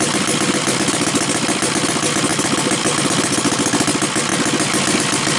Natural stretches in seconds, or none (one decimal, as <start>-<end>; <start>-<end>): 0.0-5.4